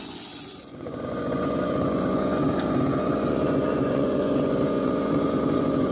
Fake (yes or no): yes